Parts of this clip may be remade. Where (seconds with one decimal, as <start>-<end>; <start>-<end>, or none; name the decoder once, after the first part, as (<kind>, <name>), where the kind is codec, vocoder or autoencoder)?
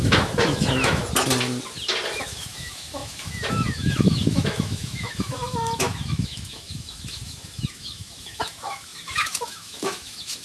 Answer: 0.0-1.0 (autoencoder, DAC-VAE); 2.2-10.4